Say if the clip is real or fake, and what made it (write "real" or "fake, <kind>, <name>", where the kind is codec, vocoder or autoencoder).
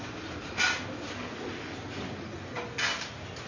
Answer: real